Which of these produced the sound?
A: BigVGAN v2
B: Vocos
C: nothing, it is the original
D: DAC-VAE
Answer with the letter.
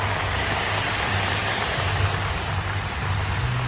C